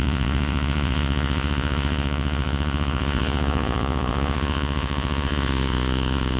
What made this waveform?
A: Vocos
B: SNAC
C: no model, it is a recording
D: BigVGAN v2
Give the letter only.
A